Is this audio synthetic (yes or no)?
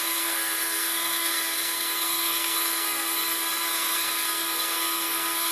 yes